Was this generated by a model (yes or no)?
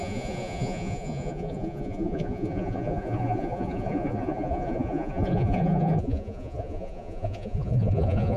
yes